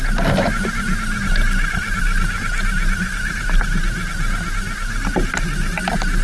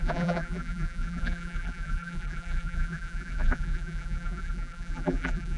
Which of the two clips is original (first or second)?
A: first